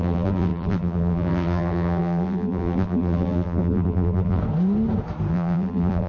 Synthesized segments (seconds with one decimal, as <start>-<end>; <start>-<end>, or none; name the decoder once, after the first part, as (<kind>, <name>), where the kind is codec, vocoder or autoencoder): 0.0-4.4 (vocoder, BigVGAN v2); 5.3-6.1